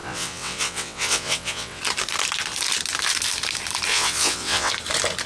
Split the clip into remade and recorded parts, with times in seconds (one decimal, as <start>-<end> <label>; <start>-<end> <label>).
0.0-1.8 remade; 1.8-3.9 recorded; 3.9-4.7 remade; 4.7-5.3 recorded